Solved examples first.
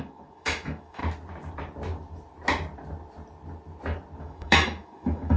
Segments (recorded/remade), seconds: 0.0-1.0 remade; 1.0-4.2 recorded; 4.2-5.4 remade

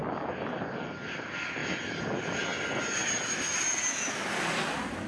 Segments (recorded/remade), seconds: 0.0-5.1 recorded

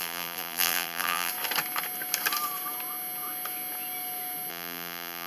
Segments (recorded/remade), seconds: 0.0-1.3 remade; 1.3-4.5 recorded; 4.5-5.3 remade

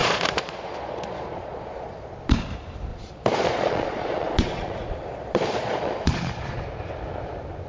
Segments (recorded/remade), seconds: 0.0-2.1 remade; 2.1-2.9 recorded; 2.9-6.6 remade; 6.6-7.7 recorded

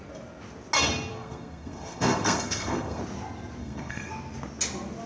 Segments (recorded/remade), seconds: 0.0-1.1 recorded; 1.1-3.0 remade; 3.0-3.6 recorded; 3.6-4.1 remade; 4.1-5.1 recorded

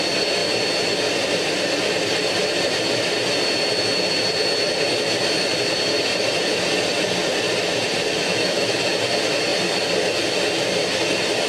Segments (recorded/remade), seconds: 0.0-8.2 recorded; 8.2-8.8 remade; 8.8-11.5 recorded